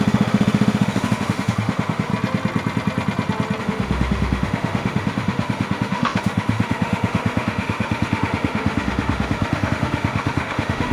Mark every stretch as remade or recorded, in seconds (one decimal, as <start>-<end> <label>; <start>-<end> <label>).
0.0-2.1 remade; 2.1-3.6 recorded; 3.6-10.9 remade